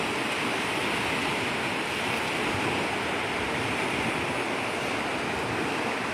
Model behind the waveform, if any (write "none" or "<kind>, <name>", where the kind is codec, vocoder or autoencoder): none